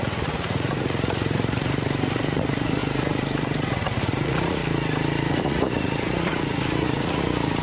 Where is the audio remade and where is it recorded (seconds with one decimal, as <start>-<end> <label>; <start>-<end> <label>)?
0.0-4.6 remade; 4.6-5.3 recorded; 5.3-7.6 remade